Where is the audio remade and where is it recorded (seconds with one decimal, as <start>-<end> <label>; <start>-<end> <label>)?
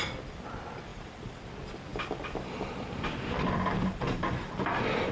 0.0-0.9 recorded; 0.9-1.5 remade; 1.5-1.9 recorded; 1.9-5.1 remade